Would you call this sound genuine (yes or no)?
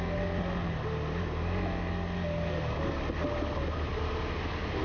yes